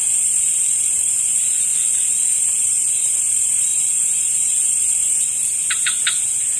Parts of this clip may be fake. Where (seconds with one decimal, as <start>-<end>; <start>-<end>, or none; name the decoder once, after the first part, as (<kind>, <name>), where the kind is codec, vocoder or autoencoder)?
0.0-1.7 (vocoder, BigVGAN v2); 2.6-6.6